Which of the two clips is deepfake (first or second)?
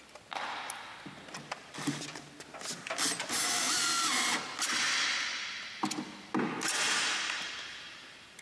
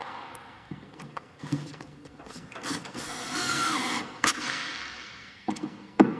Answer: second